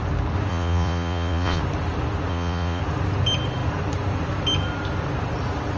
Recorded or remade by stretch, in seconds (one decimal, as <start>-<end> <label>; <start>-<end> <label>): 0.0-0.5 recorded; 0.5-1.6 remade; 1.6-2.3 recorded; 2.3-2.8 remade; 2.8-5.8 recorded